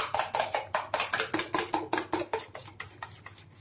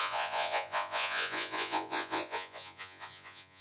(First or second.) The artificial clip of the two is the second